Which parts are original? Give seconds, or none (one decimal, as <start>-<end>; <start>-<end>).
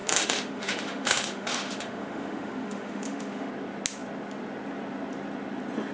3.5-5.9